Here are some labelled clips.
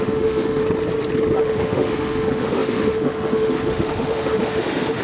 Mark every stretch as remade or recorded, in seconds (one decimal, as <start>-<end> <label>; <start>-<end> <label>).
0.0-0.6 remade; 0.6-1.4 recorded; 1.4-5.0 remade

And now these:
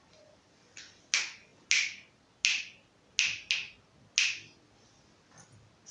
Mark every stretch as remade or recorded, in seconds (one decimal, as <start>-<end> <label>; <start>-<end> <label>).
0.0-5.9 recorded

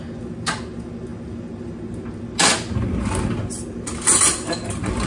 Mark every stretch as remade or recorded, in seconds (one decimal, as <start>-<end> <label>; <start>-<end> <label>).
0.0-5.1 recorded

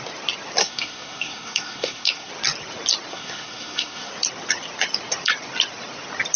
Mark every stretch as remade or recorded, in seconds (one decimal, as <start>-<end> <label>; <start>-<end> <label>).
0.0-0.6 recorded; 0.6-2.3 remade; 2.3-3.1 recorded; 3.1-4.1 remade; 4.1-6.4 recorded